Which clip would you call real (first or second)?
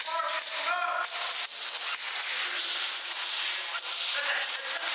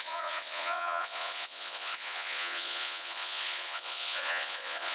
first